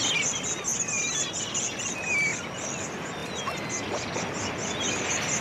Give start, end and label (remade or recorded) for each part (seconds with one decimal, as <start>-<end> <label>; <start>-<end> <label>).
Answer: 0.0-5.4 recorded